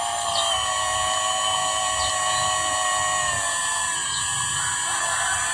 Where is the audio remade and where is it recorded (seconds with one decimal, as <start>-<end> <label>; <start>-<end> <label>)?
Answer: 0.0-5.5 recorded